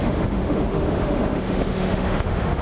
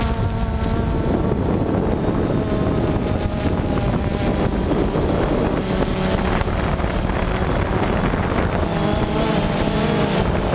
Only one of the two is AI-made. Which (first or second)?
first